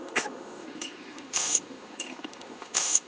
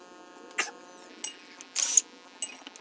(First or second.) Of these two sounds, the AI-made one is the first